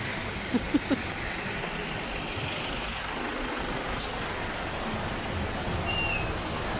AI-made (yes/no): no